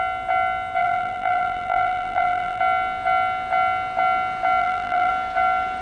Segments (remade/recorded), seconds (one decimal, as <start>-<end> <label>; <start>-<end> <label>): 0.0-0.8 recorded; 0.8-2.6 remade; 2.6-4.6 recorded; 4.6-5.1 remade; 5.1-5.8 recorded